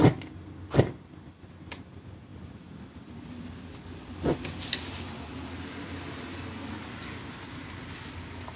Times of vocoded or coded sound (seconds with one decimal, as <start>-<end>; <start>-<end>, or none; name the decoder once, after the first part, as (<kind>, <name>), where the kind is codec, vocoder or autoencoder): none

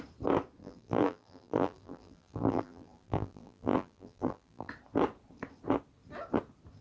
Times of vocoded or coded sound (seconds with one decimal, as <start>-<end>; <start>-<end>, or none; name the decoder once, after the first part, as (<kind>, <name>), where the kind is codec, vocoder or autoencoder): 0.6-4.7 (vocoder, BigVGAN v2)

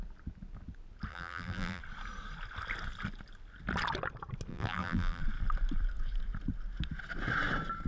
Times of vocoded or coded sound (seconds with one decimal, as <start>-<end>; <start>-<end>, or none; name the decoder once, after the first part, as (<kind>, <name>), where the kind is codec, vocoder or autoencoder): 1.1-1.8 (vocoder, BigVGAN v2); 4.5-5.2

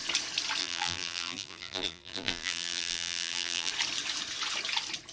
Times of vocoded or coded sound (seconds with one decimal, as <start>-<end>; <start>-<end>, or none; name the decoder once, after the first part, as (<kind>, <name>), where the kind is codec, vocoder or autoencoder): 0.6-3.7 (vocoder, BigVGAN v2)

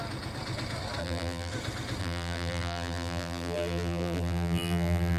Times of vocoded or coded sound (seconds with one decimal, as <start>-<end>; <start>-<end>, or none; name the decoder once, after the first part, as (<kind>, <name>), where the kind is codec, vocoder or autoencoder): 1.0-1.5 (vocoder, BigVGAN v2); 2.0-5.2